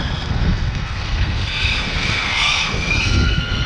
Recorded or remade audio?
remade